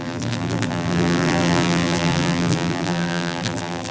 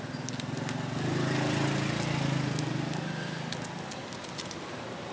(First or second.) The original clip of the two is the second